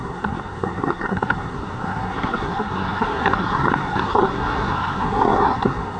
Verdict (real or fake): fake